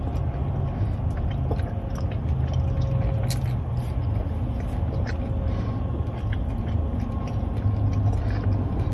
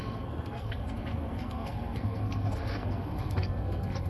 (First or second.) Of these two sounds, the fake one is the second